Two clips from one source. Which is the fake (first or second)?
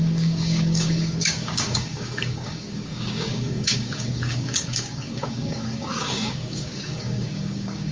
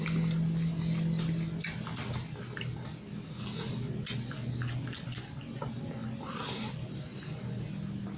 first